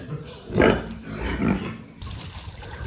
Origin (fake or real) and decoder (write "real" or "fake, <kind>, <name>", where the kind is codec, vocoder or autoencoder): real